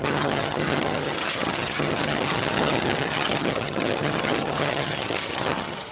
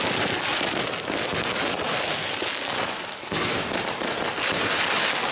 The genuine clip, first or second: second